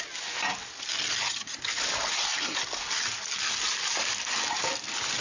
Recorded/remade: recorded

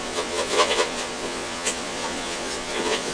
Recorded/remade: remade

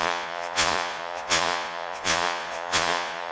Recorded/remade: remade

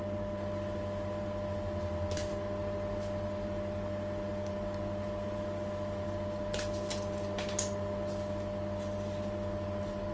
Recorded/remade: recorded